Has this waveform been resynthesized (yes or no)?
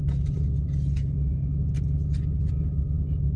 no